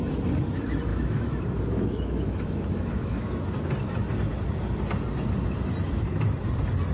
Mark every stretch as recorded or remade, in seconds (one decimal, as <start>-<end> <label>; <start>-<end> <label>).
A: 0.0-0.9 recorded; 0.9-3.3 remade; 3.3-6.9 recorded